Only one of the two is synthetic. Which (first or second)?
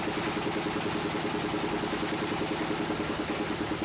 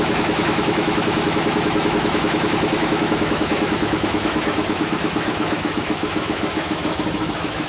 second